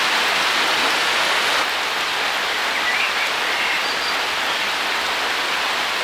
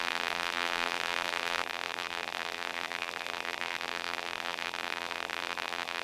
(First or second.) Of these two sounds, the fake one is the second